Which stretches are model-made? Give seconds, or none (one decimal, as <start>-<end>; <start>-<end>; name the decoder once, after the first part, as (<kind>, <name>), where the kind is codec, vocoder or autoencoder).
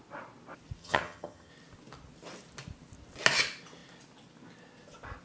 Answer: 0.8-1.5 (vocoder, HiFi-GAN)